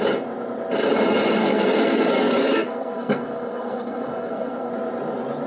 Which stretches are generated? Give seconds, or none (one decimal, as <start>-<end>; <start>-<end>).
1.4-4.7